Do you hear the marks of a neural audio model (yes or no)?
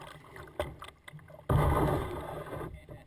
no